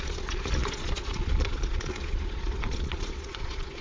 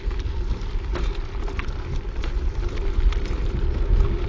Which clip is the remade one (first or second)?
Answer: first